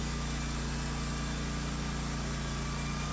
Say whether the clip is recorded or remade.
recorded